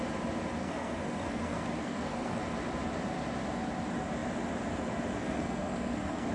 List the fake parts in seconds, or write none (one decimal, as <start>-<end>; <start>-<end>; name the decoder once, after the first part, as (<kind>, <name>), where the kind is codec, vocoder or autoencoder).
0.6-2.4 (codec, SNAC); 5.2-6.3